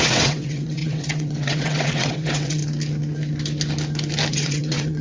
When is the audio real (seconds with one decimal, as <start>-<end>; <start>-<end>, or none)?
2.6-4.3